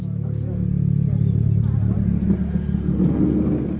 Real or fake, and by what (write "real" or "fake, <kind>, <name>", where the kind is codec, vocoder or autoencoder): real